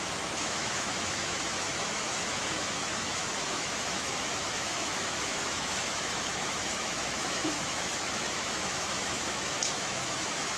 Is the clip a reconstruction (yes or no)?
yes